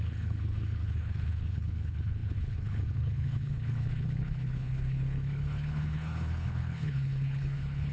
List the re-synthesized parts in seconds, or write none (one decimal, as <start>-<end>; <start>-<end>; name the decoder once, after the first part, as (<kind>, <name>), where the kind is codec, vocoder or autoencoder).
0.0-7.9 (codec, HILCodec)

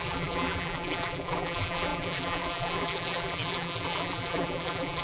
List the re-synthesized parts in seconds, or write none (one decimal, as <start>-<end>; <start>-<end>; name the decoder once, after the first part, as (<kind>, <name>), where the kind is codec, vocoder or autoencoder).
0.0-5.0 (vocoder, BigVGAN v2)

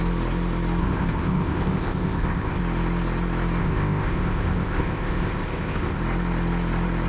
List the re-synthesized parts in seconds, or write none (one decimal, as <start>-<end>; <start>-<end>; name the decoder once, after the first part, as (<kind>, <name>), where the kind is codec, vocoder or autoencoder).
0.8-2.6 (codec, ZipCodec); 3.6-6.0

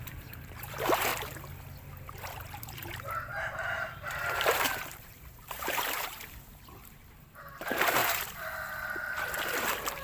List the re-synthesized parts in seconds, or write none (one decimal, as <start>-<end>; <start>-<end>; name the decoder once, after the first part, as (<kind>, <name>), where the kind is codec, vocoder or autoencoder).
0.0-1.1 (vocoder, BigVGAN v2); 3.6-8.0; 9.6-10.0

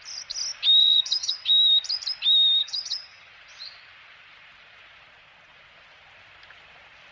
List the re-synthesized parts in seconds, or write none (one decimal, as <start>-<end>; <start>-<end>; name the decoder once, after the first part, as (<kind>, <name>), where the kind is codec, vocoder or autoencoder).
0.8-1.5 (vocoder, HiFi-GAN); 2.6-3.3